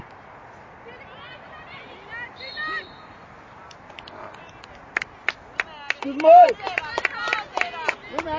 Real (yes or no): yes